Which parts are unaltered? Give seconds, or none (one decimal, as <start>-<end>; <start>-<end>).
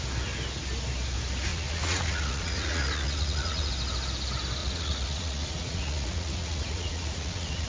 0.0-1.5; 3.7-4.6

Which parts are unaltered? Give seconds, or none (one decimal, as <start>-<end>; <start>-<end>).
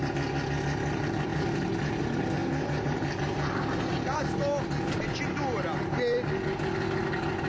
0.0-1.3; 2.0-2.4; 4.2-7.5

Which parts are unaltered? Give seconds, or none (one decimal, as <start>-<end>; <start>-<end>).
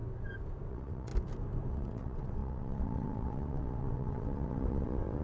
0.0-0.7; 1.1-1.7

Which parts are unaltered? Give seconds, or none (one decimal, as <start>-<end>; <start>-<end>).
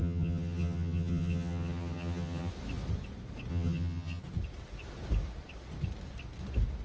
2.5-3.5; 4.2-6.8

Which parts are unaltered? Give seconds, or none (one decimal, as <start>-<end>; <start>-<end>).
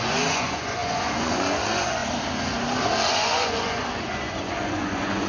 2.0-3.1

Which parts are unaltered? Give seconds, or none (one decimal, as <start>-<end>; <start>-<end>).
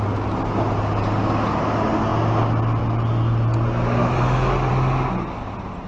0.0-4.0; 4.7-5.9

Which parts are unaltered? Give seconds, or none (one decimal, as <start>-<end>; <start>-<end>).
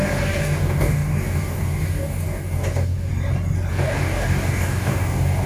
3.1-3.7